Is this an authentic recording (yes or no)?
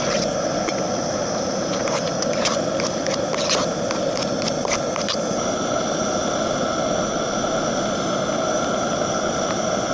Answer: yes